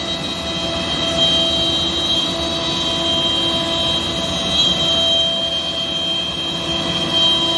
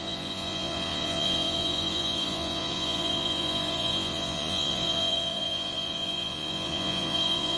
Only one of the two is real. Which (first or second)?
first